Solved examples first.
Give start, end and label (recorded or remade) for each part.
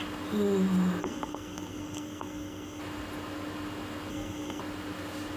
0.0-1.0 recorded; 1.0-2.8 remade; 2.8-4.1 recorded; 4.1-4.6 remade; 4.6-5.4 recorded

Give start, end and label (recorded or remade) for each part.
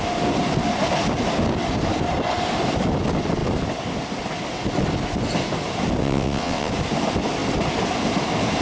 0.0-6.0 recorded; 6.0-6.7 remade; 6.7-8.6 recorded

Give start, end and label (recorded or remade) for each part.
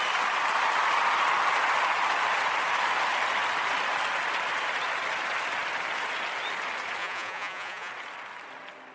0.0-7.0 recorded; 7.0-7.9 remade; 7.9-8.9 recorded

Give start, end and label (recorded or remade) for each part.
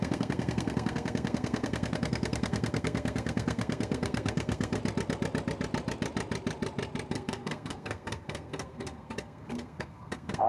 0.0-4.8 remade; 4.8-7.1 recorded; 7.1-10.5 remade